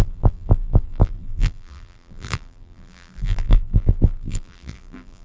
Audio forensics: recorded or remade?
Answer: remade